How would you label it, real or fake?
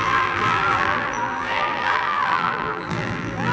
fake